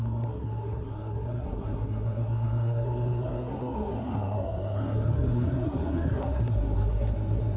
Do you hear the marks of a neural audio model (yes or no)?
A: yes